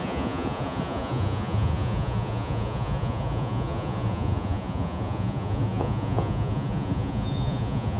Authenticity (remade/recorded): remade